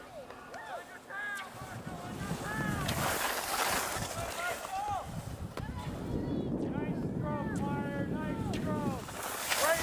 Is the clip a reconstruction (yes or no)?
no